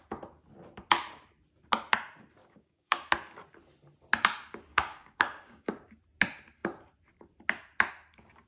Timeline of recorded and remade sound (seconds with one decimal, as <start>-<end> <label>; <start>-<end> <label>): 0.0-2.4 recorded; 2.4-3.1 remade; 3.1-4.7 recorded; 4.7-5.7 remade; 5.7-8.5 recorded